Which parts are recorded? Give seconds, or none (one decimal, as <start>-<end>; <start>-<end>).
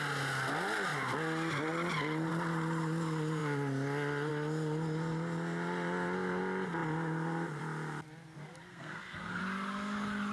0.0-8.7; 9.4-10.3